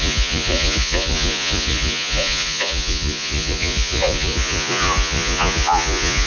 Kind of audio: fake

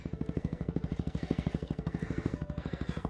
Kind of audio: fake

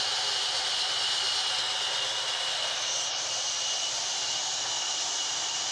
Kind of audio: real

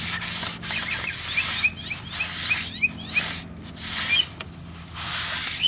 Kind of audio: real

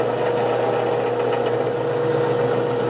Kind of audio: real